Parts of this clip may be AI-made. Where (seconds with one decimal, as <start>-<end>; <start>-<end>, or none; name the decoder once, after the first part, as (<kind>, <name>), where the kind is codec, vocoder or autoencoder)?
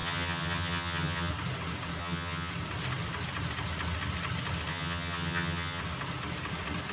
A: 0.0-1.3 (vocoder, HiFi-GAN); 2.0-2.5; 4.7-5.8